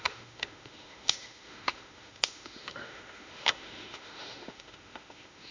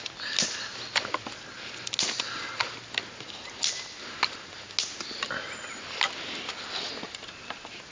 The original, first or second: second